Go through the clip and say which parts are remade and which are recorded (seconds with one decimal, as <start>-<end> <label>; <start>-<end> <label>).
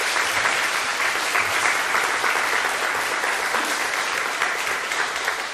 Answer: 0.0-0.9 remade; 0.9-4.2 recorded; 4.2-5.5 remade